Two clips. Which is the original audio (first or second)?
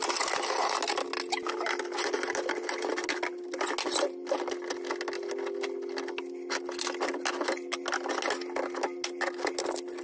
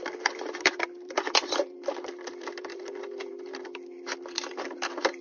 first